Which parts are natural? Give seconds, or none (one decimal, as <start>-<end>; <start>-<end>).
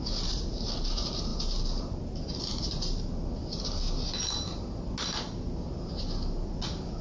0.0-7.0